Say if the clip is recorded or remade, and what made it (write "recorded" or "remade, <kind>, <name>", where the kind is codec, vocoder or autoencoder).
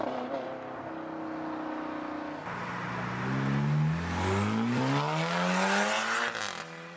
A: recorded